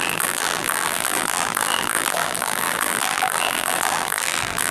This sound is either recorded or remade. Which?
remade